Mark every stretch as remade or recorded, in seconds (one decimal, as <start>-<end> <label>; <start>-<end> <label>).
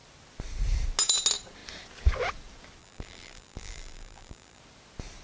0.0-2.8 recorded; 2.8-4.6 remade; 4.6-5.2 recorded